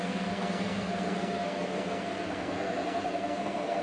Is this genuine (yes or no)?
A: no